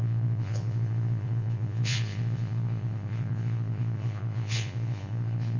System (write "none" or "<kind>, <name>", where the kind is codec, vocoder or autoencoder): vocoder, Vocos